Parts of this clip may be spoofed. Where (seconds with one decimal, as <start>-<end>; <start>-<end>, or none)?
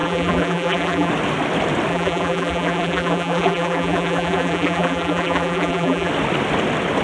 0.0-1.1; 1.9-6.1